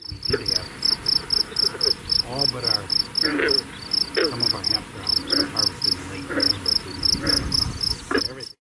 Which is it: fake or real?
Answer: real